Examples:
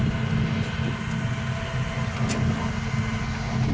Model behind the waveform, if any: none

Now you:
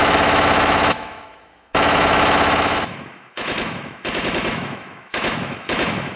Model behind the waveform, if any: autoencoder, DAC-VAE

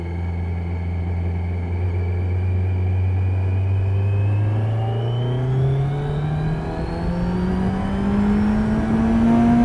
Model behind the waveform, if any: none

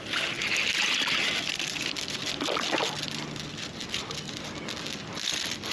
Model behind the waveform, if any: none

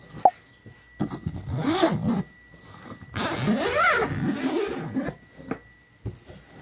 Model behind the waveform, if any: none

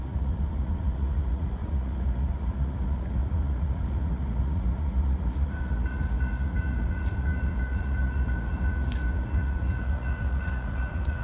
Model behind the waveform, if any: vocoder, Vocos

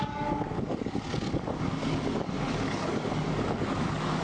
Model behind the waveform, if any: codec, DAC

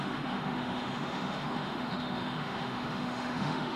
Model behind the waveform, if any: autoencoder, DAC-VAE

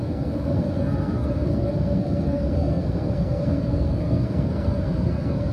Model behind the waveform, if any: codec, SNAC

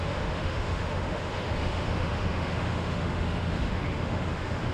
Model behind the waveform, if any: autoencoder, DAC-VAE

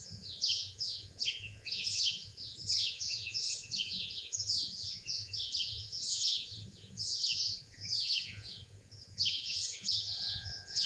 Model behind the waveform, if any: vocoder, Vocos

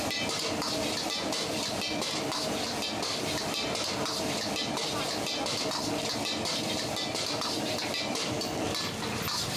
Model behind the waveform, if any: none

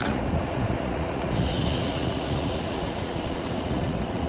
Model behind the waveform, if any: vocoder, Vocos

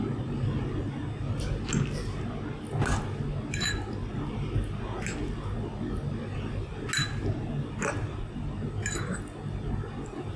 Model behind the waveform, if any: none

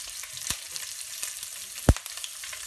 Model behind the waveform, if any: none